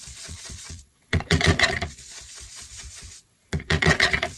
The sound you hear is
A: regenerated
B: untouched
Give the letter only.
A